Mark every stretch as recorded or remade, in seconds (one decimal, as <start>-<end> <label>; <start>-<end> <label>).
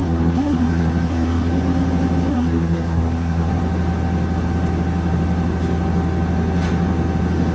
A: 0.0-1.5 remade; 1.5-2.3 recorded; 2.3-3.6 remade; 3.6-7.5 recorded